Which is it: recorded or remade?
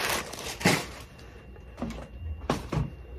remade